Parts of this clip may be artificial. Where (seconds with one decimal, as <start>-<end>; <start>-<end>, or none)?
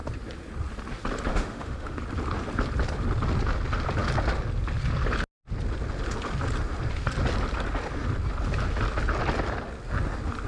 1.3-2.0